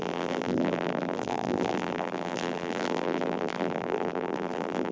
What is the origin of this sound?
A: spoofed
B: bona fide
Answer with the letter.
A